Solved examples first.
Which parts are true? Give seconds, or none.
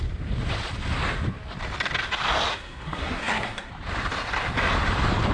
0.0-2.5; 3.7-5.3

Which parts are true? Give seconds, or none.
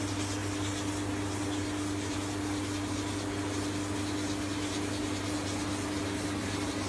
0.0-6.9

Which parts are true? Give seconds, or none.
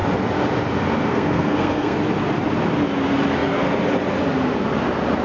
0.0-1.1; 2.0-5.2